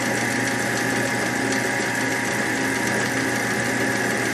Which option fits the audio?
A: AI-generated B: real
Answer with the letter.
B